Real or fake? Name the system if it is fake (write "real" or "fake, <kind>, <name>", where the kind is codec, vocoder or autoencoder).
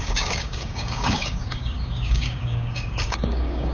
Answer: fake, codec, DAC